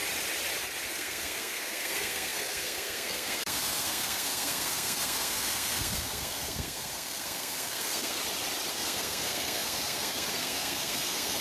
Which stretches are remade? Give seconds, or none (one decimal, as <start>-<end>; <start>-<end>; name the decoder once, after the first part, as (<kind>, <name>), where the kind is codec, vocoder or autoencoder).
0.9-8.2 (codec, SNAC); 8.7-11.4